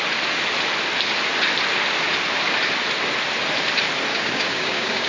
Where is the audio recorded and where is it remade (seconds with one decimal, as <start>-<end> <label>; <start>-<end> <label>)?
0.0-4.1 recorded; 4.1-5.1 remade